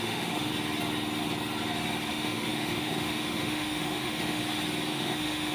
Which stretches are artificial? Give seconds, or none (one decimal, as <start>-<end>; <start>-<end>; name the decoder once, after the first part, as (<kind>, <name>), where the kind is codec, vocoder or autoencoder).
0.0-0.5 (autoencoder, DAC-VAE); 2.1-4.4; 4.9-5.5